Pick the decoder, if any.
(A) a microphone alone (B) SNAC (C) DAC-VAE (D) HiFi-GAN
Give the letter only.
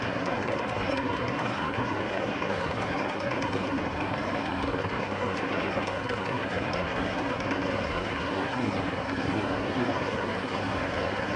B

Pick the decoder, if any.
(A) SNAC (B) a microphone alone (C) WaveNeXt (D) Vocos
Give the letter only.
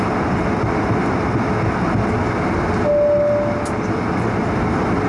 B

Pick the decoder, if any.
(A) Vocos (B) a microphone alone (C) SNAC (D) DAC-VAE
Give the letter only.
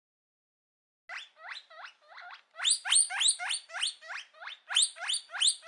B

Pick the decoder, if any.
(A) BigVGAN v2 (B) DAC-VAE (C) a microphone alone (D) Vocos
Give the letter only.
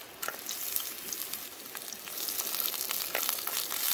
C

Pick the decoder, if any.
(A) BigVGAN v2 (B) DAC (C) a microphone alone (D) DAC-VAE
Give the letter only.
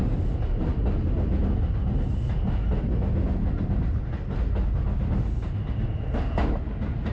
C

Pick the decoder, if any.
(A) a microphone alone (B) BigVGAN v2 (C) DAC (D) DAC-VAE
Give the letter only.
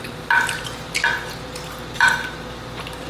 A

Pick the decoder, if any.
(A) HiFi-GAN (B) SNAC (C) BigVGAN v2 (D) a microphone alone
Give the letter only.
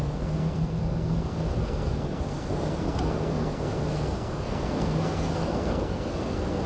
B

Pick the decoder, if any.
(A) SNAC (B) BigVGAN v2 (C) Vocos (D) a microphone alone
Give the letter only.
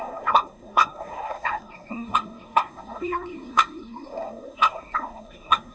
A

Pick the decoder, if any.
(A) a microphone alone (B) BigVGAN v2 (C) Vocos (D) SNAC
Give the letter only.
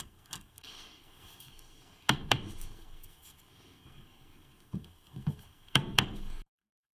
D